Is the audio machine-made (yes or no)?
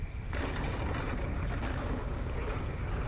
no